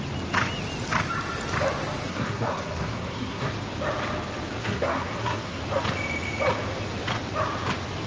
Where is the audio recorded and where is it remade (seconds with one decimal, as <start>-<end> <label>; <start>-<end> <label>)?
0.0-2.0 recorded; 2.0-3.5 remade; 3.5-4.6 recorded; 4.6-5.6 remade; 5.6-8.1 recorded